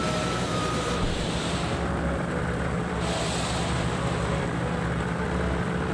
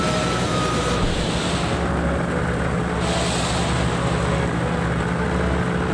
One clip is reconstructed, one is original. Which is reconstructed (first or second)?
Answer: first